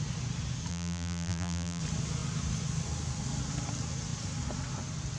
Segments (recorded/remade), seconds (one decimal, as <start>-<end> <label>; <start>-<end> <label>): 0.0-0.7 recorded; 0.7-1.8 remade; 1.8-5.2 recorded